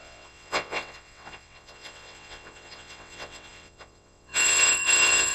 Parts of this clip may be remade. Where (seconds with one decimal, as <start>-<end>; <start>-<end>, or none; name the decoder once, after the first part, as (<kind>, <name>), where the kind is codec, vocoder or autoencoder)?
0.0-5.3 (vocoder, WaveNeXt)

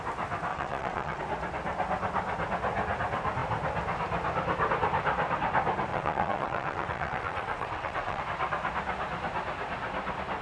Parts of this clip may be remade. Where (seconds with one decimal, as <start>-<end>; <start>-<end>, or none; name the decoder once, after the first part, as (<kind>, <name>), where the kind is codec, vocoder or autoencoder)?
0.5-1.2 (vocoder, WaveNeXt); 5.9-8.2

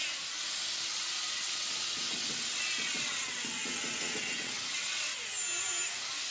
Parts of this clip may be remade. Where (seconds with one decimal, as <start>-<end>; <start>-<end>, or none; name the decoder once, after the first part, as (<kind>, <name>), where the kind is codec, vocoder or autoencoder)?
1.3-5.1 (vocoder, WaveNeXt)

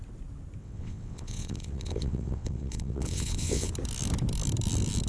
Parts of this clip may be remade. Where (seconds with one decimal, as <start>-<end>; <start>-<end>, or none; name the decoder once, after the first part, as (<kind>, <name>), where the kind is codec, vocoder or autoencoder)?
0.6-3.7 (vocoder, WaveNeXt)

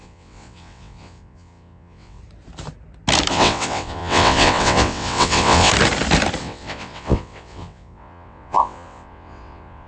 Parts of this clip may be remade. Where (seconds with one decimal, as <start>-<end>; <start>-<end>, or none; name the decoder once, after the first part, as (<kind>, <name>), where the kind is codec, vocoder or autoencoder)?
0.0-2.2 (vocoder, WaveNeXt); 3.3-5.7; 6.4-9.9

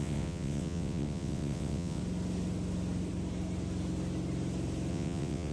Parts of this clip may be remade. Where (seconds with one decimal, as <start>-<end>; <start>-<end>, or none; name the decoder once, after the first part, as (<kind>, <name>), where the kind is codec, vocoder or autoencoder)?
0.0-2.0 (vocoder, WaveNeXt); 4.9-5.5

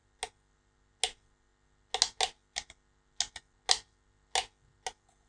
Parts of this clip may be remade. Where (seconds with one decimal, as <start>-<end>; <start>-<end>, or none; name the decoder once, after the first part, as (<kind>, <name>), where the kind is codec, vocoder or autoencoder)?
none

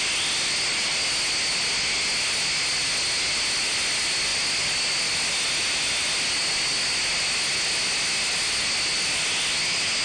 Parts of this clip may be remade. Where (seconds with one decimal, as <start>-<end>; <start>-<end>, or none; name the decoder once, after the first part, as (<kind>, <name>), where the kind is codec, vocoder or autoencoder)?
none